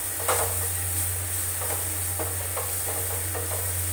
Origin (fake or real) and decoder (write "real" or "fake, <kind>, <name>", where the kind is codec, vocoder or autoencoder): real